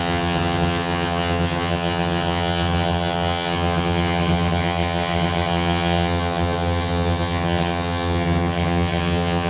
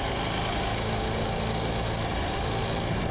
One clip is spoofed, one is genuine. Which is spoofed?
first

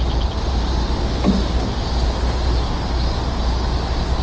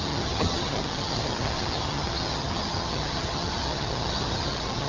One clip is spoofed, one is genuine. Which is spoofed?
second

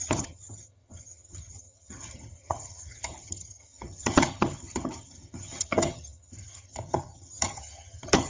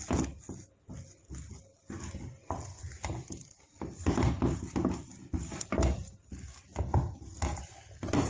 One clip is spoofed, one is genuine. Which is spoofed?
first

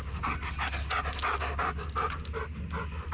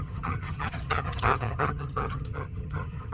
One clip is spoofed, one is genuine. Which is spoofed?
second